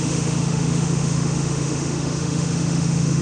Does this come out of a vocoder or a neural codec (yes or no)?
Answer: yes